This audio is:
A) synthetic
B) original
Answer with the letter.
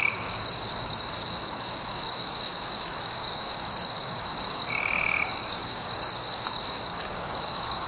A